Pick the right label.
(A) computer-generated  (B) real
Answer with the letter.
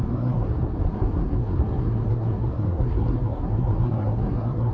A